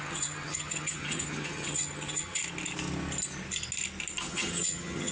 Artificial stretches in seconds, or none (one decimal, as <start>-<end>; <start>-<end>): 0.0-2.4; 4.2-5.1